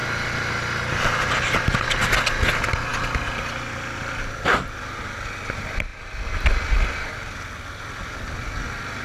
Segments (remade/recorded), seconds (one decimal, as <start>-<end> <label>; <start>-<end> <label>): 0.0-9.0 recorded